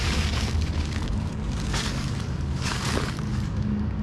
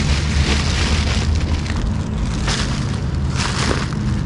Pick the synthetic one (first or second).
first